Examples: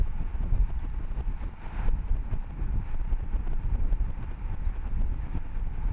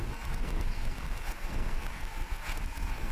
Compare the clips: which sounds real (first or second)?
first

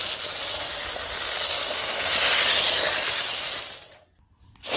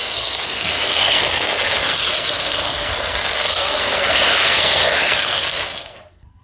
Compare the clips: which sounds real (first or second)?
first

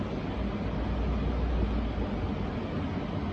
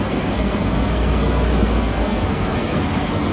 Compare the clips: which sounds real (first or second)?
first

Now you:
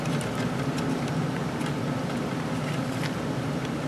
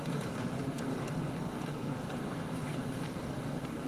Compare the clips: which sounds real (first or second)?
first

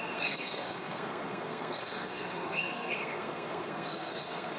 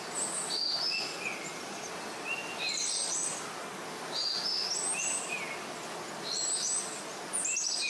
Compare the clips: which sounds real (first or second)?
second